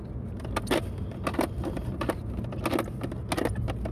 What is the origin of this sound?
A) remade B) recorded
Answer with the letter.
B